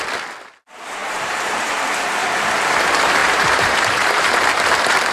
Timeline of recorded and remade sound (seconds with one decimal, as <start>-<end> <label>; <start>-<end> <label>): 0.0-1.0 recorded; 1.0-1.7 remade; 1.7-3.2 recorded; 3.2-4.3 remade; 4.3-5.1 recorded